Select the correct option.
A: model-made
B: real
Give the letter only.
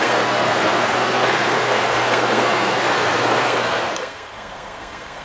A